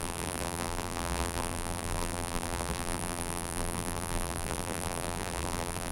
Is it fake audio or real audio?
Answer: fake